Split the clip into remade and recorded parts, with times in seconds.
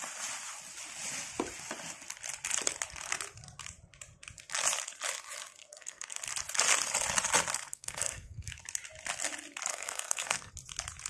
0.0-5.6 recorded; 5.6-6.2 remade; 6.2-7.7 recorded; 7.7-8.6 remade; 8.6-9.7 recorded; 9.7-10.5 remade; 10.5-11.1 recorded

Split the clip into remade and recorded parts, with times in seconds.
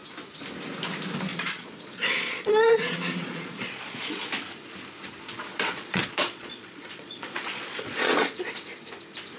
0.0-1.3 recorded; 1.3-4.3 remade; 4.3-5.5 recorded; 5.5-8.5 remade; 8.5-9.4 recorded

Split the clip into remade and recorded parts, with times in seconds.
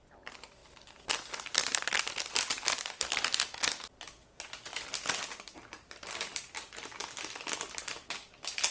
0.0-8.7 recorded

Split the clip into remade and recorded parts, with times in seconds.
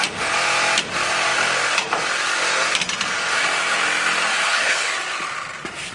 0.0-4.3 recorded; 4.3-4.9 remade; 4.9-5.9 recorded